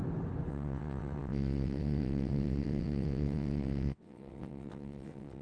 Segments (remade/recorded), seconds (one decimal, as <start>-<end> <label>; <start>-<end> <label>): 0.0-0.5 recorded; 0.5-5.4 remade